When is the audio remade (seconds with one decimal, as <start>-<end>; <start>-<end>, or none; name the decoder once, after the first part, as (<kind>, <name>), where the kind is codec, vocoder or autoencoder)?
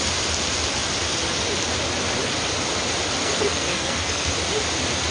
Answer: 3.2-4.3 (codec, SNAC)